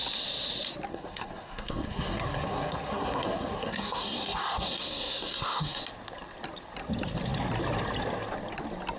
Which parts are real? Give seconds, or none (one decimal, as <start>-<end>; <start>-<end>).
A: 0.0-0.9; 5.8-9.0